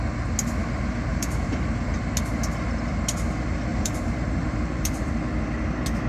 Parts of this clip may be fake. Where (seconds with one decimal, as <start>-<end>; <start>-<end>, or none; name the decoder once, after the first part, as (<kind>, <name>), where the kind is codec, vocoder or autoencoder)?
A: 1.1-2.0 (vocoder, BigVGAN v2); 3.7-5.1